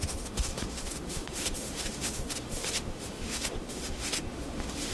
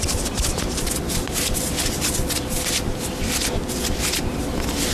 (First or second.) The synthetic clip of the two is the first